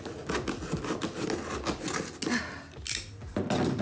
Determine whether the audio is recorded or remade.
recorded